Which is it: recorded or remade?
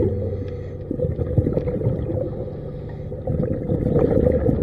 recorded